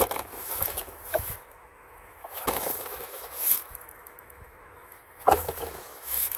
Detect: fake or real fake